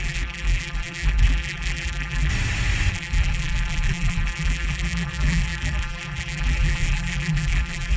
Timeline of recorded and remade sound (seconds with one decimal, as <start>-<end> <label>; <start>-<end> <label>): 0.0-2.3 remade; 2.3-2.9 recorded; 2.9-8.0 remade